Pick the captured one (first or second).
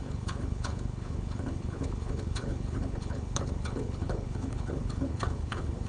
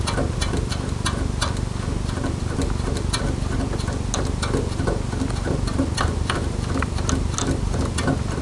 second